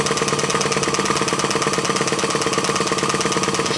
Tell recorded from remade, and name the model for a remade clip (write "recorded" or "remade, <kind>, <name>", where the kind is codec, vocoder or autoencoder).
recorded